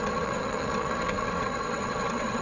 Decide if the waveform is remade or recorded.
remade